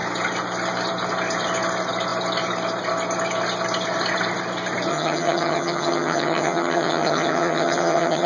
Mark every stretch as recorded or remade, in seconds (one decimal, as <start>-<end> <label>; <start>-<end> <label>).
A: 0.0-4.9 recorded; 4.9-8.3 remade